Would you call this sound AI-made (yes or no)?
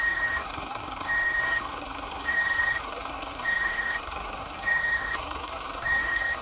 yes